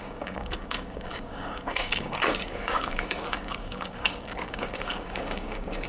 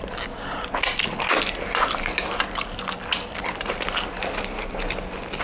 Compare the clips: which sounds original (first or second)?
second